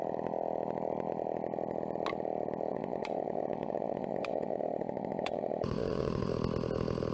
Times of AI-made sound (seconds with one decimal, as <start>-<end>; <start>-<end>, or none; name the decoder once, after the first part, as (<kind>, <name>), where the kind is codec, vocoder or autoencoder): 2.7-6.3 (vocoder, Vocos)